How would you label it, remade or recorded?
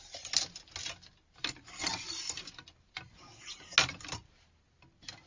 recorded